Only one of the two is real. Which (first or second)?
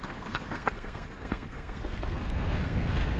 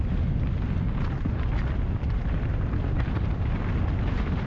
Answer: second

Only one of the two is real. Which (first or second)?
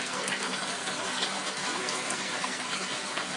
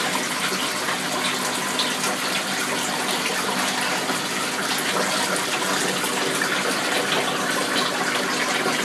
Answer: second